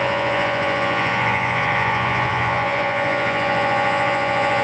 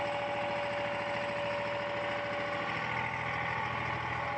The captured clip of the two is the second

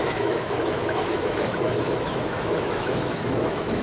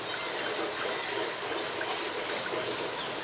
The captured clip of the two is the second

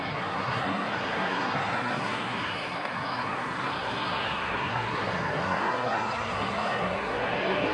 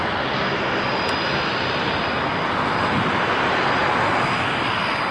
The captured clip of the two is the second